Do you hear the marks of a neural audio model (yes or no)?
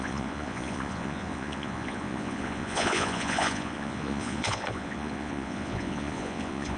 yes